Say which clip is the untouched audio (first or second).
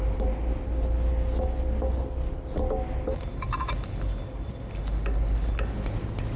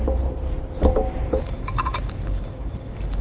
first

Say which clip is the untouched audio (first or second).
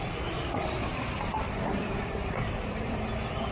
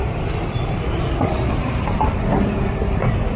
second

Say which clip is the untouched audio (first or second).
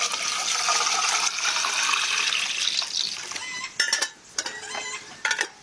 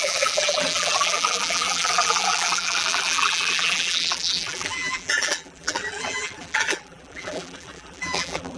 first